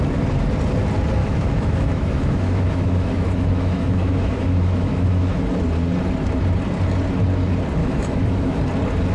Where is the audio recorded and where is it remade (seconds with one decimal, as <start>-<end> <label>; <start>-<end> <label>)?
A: 0.0-1.2 recorded; 1.2-5.4 remade; 5.4-7.8 recorded; 7.8-8.6 remade; 8.6-9.1 recorded